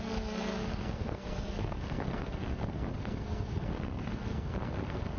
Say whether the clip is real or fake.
fake